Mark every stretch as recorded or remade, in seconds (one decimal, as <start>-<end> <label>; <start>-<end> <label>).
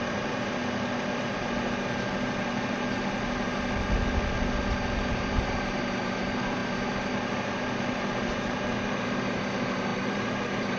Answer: 0.0-0.6 remade; 0.6-1.1 recorded; 1.1-3.5 remade; 3.5-5.1 recorded; 5.1-10.8 remade